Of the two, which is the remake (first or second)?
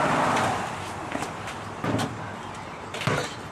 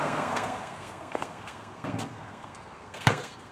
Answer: second